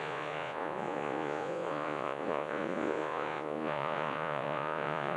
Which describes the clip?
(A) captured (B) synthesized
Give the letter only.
B